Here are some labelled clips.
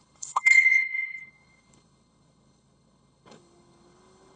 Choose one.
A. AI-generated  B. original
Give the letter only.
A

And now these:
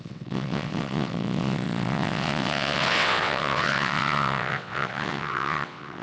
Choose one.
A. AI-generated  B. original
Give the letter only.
A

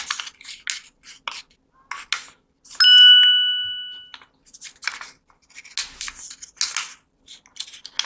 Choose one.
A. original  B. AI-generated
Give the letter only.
A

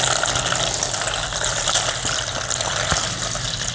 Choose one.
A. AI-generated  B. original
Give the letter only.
B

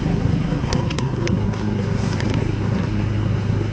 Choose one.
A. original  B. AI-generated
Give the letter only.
B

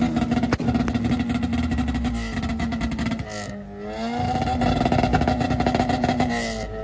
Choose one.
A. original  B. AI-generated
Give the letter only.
A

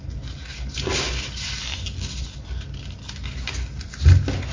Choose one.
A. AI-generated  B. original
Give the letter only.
B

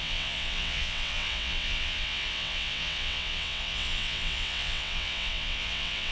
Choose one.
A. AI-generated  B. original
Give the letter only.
A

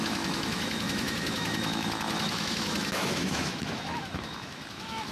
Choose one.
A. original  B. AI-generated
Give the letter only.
B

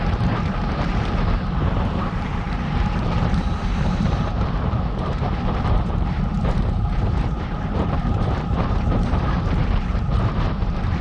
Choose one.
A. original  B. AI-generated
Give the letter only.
B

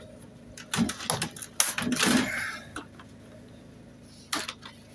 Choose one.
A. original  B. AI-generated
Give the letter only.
A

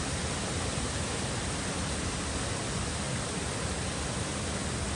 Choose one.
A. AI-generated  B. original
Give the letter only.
B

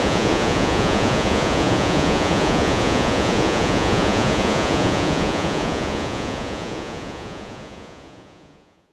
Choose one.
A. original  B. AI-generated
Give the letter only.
B